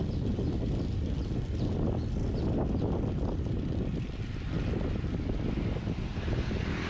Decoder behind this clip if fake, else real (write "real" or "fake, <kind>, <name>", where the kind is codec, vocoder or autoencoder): real